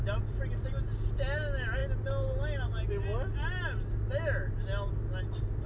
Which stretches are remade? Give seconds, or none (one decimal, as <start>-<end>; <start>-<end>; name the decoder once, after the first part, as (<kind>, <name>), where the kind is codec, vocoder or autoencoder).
none